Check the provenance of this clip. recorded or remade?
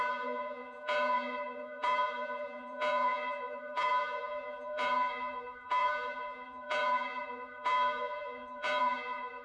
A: remade